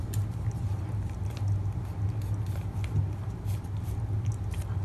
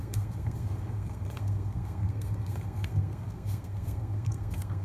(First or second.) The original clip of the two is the first